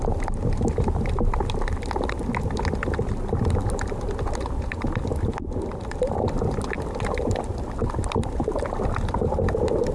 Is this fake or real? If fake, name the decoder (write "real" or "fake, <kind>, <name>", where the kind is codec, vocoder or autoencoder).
real